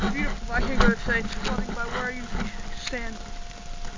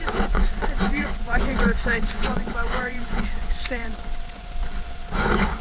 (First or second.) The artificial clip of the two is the second